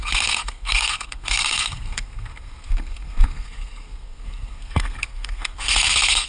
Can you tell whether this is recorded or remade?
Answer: remade